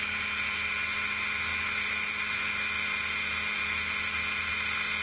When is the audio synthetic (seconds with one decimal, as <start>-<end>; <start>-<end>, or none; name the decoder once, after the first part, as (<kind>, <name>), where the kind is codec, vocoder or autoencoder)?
none